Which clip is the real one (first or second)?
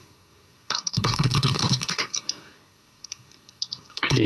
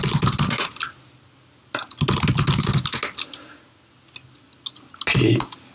second